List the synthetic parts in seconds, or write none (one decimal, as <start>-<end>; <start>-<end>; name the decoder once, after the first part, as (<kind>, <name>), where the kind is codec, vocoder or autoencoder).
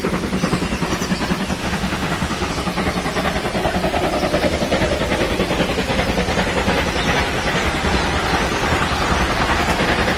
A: 1.6-2.5 (autoencoder, DAC-VAE)